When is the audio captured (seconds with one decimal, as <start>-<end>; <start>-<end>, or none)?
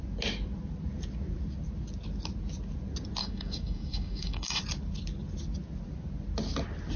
0.0-3.2; 4.6-7.0